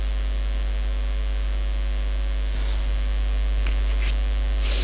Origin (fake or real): real